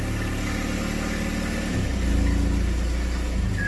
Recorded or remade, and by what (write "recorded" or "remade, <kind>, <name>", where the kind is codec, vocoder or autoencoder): recorded